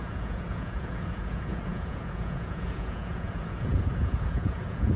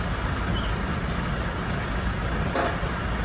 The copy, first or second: first